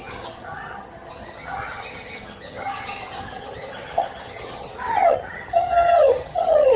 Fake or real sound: fake